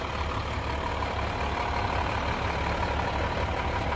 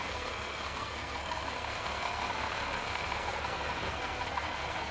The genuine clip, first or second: first